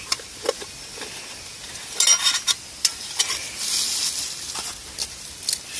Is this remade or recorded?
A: recorded